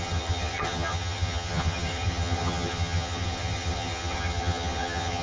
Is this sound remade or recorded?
remade